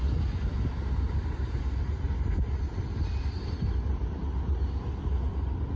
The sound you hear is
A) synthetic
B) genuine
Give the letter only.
B